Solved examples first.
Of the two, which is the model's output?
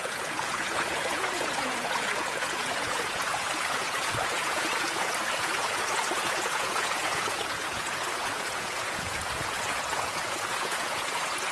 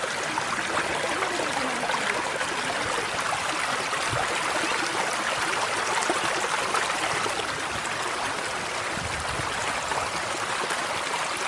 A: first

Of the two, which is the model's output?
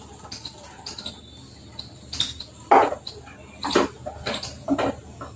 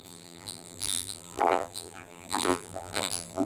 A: second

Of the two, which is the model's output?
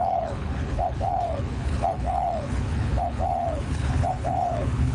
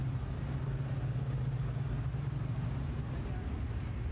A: first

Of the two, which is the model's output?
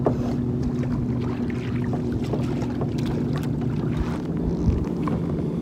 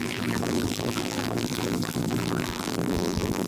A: second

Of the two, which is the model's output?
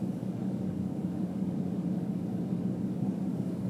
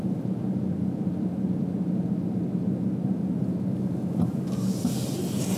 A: first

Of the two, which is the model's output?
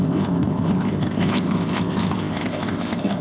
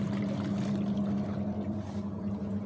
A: first